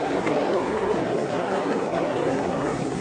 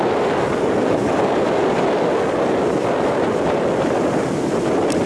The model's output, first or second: first